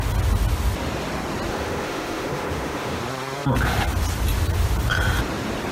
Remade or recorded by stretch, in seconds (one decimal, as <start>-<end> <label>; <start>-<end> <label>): 0.0-1.5 recorded; 1.5-3.0 remade; 3.0-5.7 recorded